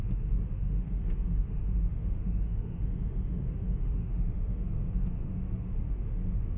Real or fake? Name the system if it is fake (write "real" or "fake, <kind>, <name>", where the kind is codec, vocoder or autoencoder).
fake, autoencoder, DAC-VAE